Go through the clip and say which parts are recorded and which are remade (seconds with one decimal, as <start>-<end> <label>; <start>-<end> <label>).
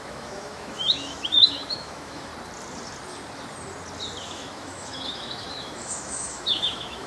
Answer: 0.0-2.3 remade; 2.3-4.2 recorded; 4.2-7.1 remade